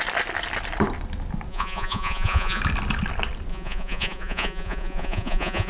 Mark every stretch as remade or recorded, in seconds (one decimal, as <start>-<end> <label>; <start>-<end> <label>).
0.0-1.5 recorded; 1.5-2.6 remade; 2.6-3.5 recorded; 3.5-5.7 remade